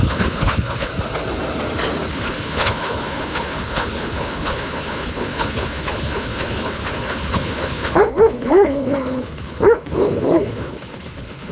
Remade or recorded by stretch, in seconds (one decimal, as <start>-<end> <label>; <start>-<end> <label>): 0.0-0.9 remade; 0.9-2.1 recorded; 2.1-11.5 remade